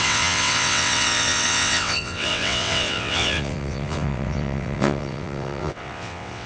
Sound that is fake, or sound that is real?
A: fake